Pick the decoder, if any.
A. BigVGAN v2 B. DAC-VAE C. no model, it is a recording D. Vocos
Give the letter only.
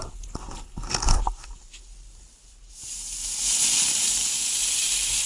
C